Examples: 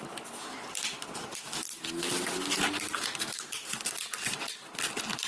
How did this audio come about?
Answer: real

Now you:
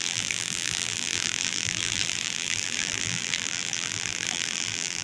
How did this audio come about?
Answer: fake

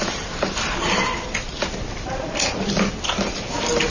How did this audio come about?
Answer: real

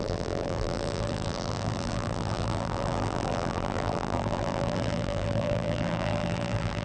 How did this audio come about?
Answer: fake